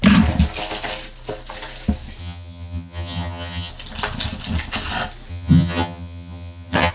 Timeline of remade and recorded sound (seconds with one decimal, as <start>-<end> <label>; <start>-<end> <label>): 0.0-2.2 recorded; 2.2-3.7 remade; 3.7-5.3 recorded; 5.3-6.9 remade